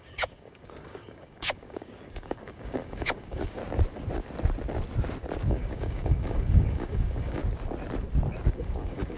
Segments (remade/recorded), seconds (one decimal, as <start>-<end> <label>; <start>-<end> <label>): 0.0-3.6 remade; 3.6-5.5 recorded; 5.5-7.4 remade; 7.4-8.5 recorded; 8.5-9.2 remade